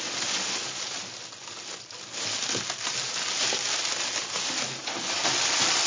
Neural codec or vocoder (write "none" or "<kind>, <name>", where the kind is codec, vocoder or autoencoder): none